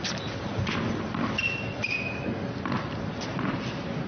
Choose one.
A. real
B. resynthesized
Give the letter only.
A